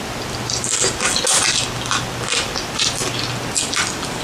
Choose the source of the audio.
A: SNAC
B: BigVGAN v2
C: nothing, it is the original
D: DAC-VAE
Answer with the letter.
C